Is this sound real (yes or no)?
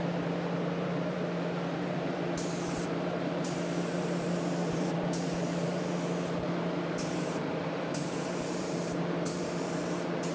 no